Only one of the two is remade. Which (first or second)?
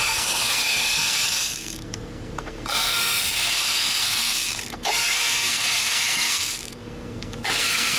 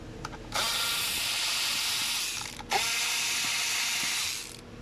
first